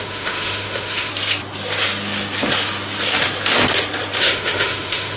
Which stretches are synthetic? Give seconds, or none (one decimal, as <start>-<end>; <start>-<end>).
0.0-1.1; 4.2-5.2